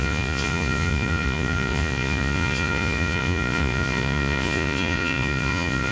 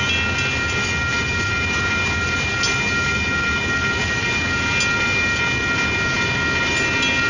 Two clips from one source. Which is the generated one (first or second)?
first